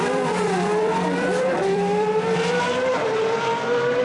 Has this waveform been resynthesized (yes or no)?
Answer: yes